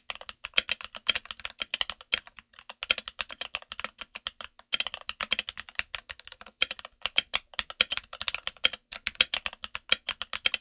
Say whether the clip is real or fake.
real